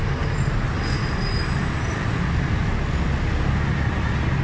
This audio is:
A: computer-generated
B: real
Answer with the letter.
B